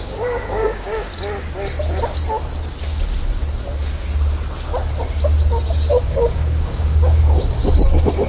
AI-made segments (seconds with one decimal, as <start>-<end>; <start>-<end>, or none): 0.0-1.1; 6.0-7.6